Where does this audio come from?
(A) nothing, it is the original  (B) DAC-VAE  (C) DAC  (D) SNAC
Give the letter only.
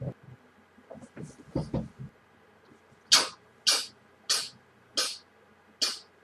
A